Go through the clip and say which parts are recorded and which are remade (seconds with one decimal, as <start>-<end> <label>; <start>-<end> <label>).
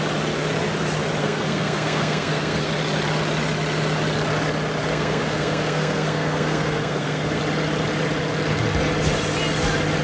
0.0-1.2 recorded; 1.2-2.7 remade; 2.7-4.9 recorded; 4.9-7.4 remade; 7.4-10.0 recorded